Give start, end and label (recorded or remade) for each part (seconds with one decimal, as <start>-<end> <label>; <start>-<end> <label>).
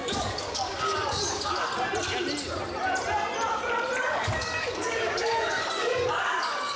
0.0-1.7 remade; 1.7-4.0 recorded; 4.0-6.8 remade